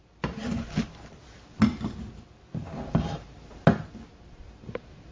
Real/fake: real